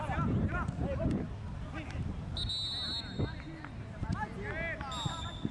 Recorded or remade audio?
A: recorded